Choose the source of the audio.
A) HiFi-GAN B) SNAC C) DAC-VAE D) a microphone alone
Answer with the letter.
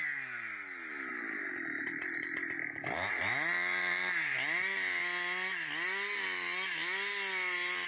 D